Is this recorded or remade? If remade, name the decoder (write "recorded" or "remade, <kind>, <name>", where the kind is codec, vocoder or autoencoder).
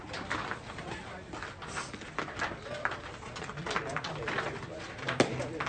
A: recorded